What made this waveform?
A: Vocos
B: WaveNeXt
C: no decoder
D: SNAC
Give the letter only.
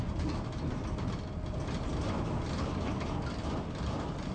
C